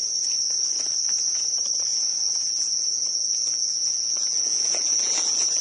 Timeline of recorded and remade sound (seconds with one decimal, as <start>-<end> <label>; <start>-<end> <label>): 0.0-1.9 recorded; 1.9-5.6 remade